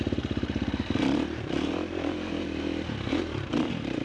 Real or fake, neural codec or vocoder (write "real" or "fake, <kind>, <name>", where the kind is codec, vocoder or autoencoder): fake, vocoder, BigVGAN v2